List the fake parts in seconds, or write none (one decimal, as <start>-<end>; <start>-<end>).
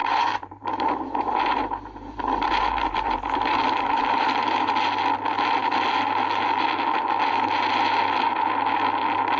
0.0-4.7